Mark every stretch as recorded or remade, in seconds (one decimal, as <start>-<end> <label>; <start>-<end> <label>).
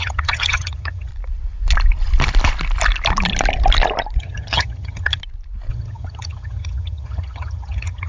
0.0-1.1 remade; 1.1-4.2 recorded; 4.2-5.2 remade; 5.2-5.7 recorded; 5.7-8.1 remade